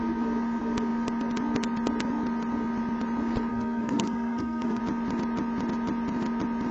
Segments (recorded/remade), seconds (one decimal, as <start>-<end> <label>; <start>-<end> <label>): 0.0-3.5 recorded; 3.5-4.8 remade; 4.8-6.7 recorded